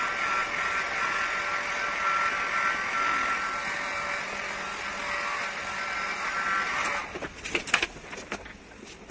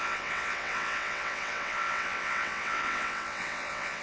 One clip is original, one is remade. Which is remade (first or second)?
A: second